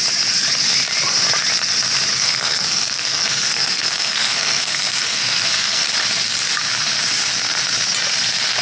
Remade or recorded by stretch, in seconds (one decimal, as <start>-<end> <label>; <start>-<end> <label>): 0.0-2.1 recorded; 2.1-5.9 remade; 5.9-8.6 recorded